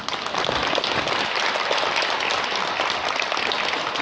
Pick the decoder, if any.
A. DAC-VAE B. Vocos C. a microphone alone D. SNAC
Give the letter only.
C